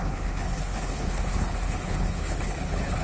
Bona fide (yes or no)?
no